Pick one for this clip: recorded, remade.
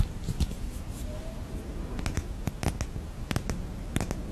recorded